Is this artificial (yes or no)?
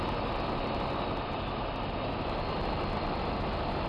no